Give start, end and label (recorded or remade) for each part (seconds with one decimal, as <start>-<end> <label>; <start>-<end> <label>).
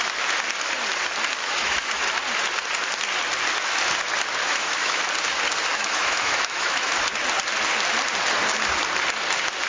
0.0-1.4 recorded; 1.4-2.0 remade; 2.0-4.4 recorded; 4.4-5.0 remade; 5.0-5.7 recorded; 5.7-6.9 remade; 6.9-9.7 recorded